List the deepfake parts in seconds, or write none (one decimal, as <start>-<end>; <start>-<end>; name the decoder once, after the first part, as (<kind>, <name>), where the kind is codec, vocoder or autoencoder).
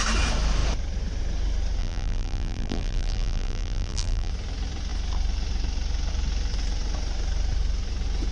1.8-4.3 (vocoder, BigVGAN v2)